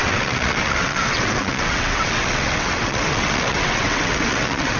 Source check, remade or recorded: remade